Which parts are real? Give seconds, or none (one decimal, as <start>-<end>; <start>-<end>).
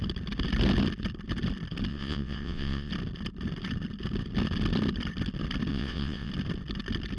0.0-1.9; 2.9-5.7; 6.3-7.2